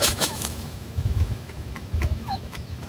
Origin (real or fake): fake